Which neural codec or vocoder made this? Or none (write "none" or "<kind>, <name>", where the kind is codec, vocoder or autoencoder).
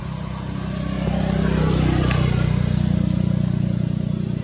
none